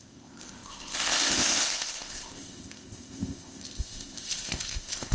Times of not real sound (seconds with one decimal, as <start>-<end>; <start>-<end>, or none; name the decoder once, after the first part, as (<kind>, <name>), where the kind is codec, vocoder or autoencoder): 0.0-5.1 (codec, ZipCodec)